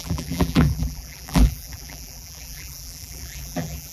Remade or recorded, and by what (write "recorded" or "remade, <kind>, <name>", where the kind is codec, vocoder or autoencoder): remade, vocoder, BigVGAN v2